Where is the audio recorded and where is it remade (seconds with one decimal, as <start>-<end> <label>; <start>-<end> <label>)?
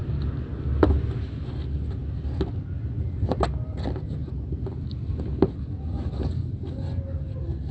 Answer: 0.0-7.7 recorded